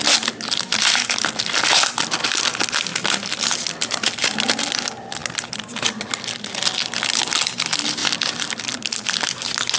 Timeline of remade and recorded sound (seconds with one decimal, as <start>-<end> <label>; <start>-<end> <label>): 0.0-9.8 recorded